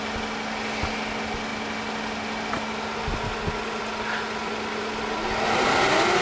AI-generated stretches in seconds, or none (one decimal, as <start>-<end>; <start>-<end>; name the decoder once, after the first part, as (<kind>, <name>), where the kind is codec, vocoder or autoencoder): none